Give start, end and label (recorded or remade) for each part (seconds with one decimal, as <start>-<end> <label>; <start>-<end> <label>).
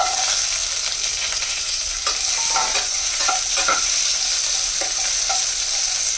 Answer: 0.0-1.2 recorded; 1.2-1.8 remade; 1.8-2.6 recorded; 2.6-3.3 remade; 3.3-6.2 recorded